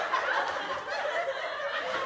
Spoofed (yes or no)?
no